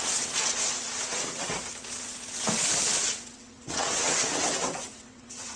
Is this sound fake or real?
fake